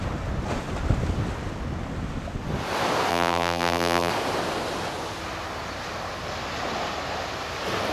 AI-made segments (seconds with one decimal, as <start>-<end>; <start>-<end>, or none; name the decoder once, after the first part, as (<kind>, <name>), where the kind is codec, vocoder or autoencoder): 3.1-4.1 (vocoder, BigVGAN v2)